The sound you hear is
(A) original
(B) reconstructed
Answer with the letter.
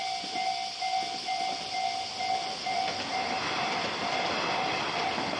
A